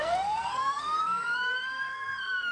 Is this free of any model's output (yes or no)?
no